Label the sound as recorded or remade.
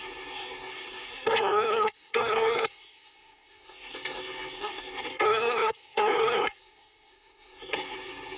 remade